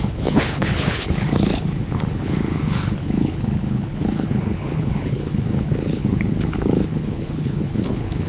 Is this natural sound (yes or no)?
no